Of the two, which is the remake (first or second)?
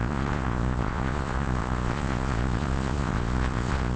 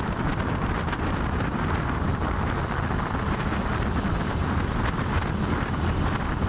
first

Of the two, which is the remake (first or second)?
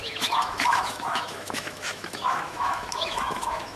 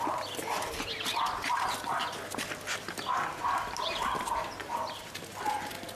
first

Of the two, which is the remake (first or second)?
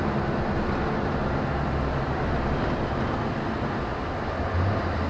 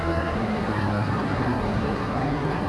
second